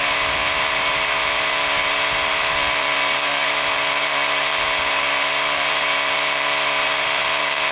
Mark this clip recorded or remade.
remade